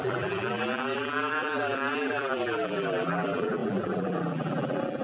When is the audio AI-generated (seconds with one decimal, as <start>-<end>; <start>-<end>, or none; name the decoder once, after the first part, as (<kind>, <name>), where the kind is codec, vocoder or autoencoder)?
0.0-5.0 (vocoder, BigVGAN v2)